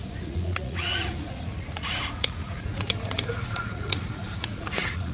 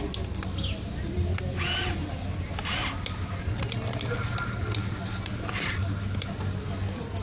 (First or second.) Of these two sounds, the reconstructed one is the first